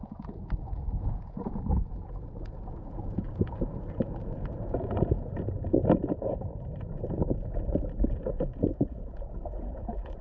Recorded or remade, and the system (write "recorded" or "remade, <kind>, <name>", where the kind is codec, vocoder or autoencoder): remade, vocoder, Vocos